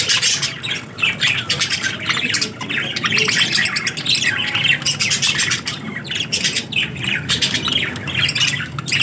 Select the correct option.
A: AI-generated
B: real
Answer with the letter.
B